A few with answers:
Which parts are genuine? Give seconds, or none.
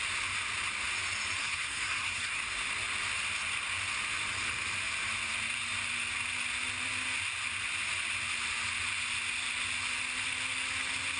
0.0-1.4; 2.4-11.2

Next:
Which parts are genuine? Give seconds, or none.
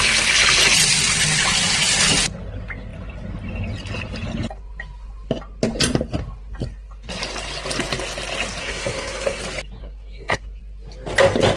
0.0-8.6; 9.4-9.8; 10.6-11.6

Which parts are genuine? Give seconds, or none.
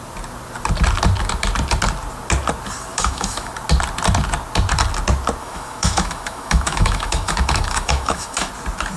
0.0-2.9; 3.5-5.4; 8.5-9.0